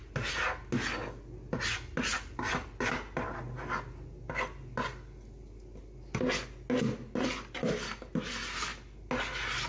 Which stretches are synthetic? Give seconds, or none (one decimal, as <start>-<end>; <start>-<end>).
none